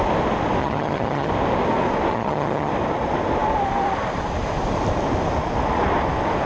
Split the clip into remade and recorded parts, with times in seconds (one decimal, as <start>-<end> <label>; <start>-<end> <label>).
0.0-0.6 recorded; 0.6-1.3 remade; 1.3-2.1 recorded; 2.1-2.7 remade; 2.7-6.5 recorded